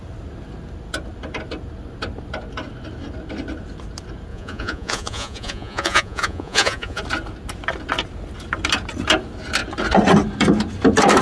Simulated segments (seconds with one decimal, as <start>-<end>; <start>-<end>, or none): 4.3-7.0